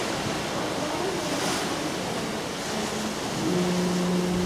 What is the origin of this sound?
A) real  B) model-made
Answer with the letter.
A